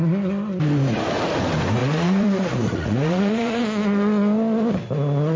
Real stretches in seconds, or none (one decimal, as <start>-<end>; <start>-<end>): 0.0-1.8; 3.6-5.4

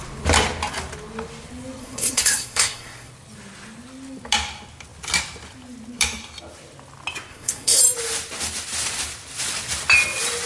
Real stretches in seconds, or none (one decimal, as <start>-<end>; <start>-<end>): 0.0-1.8; 3.1-7.3; 7.8-10.5